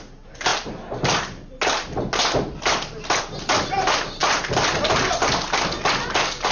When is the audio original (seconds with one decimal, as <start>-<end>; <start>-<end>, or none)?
0.0-6.5